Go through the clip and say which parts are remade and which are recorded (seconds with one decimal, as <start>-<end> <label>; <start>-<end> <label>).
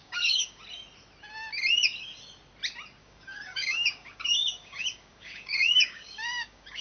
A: 0.0-0.6 remade; 0.6-3.0 recorded; 3.0-6.8 remade